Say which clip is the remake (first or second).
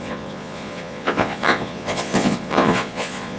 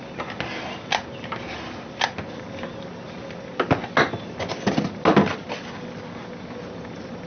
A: first